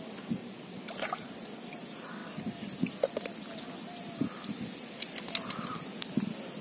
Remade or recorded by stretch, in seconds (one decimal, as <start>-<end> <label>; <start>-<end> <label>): 0.0-0.4 recorded; 0.4-1.3 remade; 1.3-6.6 recorded